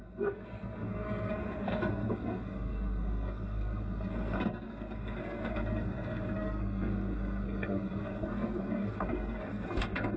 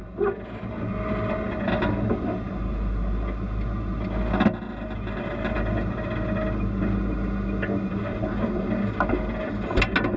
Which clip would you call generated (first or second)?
first